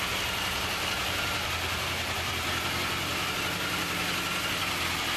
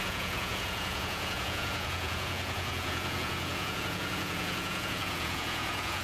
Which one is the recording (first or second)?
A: first